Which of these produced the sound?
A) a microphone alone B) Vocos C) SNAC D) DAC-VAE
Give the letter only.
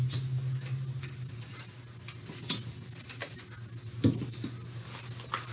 A